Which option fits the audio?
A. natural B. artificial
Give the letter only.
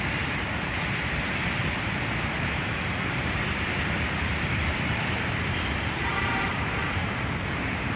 B